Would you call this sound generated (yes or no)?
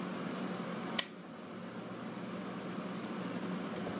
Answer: no